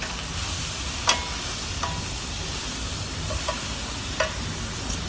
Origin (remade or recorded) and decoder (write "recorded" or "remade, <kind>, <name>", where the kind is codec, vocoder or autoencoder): recorded